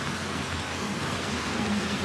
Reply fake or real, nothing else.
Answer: fake